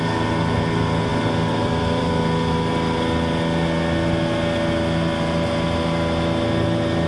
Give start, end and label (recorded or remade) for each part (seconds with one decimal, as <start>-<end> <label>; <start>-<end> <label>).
0.0-1.1 recorded; 1.1-2.1 remade; 2.1-7.1 recorded